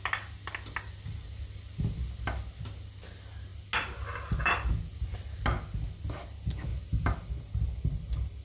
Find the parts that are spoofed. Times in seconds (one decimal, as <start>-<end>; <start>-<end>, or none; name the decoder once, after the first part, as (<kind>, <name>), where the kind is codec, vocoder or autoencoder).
none